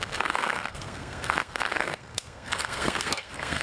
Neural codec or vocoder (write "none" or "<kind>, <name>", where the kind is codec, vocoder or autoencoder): codec, SNAC